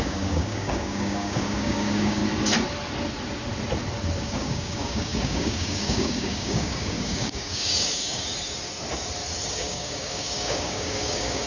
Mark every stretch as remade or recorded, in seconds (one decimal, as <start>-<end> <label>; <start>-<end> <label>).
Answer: 0.0-2.2 remade; 2.2-4.2 recorded; 4.2-8.3 remade; 8.3-9.5 recorded; 9.5-11.5 remade